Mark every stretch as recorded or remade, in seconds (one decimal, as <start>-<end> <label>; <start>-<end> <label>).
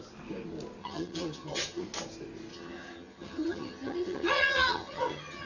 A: 0.0-0.8 recorded; 0.8-1.8 remade; 1.8-2.5 recorded; 2.5-5.5 remade